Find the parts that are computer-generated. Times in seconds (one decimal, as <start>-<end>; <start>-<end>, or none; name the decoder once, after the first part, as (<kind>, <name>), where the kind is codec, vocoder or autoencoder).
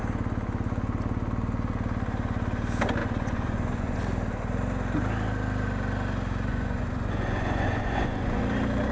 3.0-4.0 (vocoder, Vocos); 6.5-8.4